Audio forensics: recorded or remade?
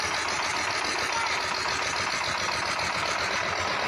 recorded